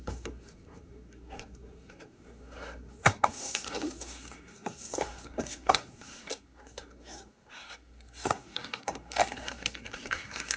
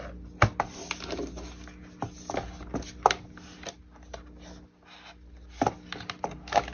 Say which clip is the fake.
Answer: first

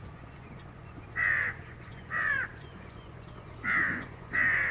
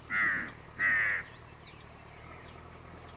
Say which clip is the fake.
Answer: first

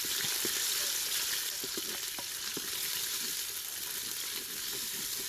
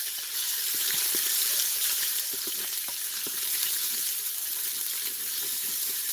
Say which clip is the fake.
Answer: second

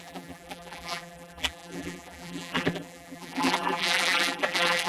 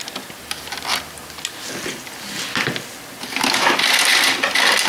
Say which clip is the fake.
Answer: first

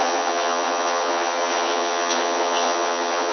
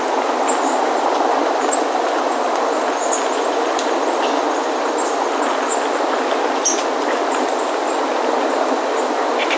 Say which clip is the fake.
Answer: first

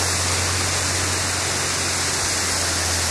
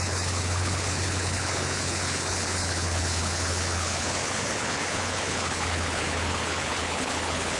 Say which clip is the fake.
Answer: second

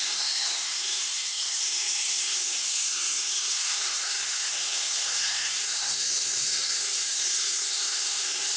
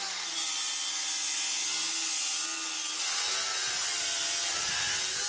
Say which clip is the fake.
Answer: first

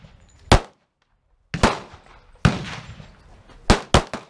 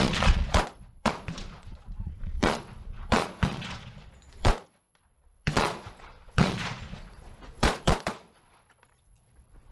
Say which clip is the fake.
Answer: second